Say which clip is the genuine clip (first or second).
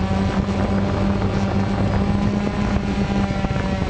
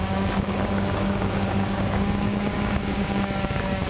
first